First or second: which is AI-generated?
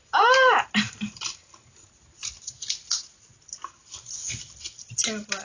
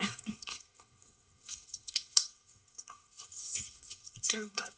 second